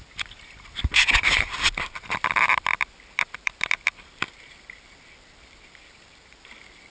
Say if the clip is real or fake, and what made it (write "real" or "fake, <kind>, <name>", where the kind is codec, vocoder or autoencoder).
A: fake, vocoder, BigVGAN v2